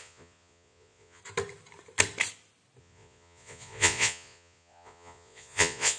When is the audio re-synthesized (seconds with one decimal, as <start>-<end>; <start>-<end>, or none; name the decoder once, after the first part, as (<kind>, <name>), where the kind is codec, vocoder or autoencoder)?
0.0-1.2 (vocoder, Vocos); 2.8-6.0